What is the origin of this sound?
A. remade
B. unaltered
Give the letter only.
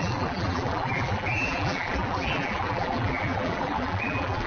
A